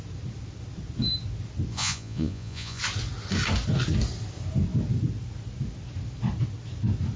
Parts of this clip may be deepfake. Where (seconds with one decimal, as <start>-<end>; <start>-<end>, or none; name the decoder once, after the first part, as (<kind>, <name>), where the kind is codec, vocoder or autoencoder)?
1.7-2.8 (vocoder, Vocos)